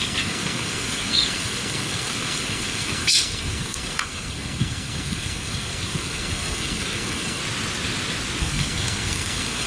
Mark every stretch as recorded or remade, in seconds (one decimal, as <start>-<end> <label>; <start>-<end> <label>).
0.0-7.4 remade; 7.4-8.4 recorded; 8.4-9.7 remade